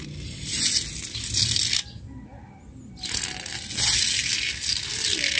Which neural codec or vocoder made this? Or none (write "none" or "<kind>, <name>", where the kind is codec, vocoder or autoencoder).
none